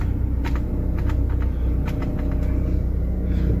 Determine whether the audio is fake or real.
real